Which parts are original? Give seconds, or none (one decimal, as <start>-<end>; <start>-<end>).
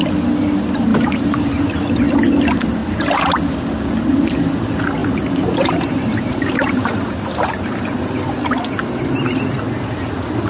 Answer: 0.0-0.9; 1.6-5.0; 7.7-10.5